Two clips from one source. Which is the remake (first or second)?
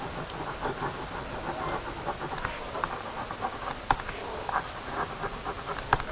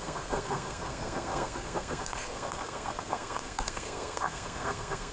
second